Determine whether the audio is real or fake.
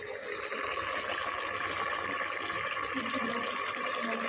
real